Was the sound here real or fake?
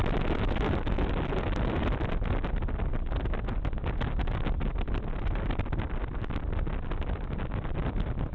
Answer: real